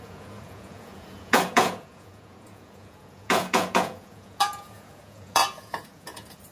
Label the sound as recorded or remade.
remade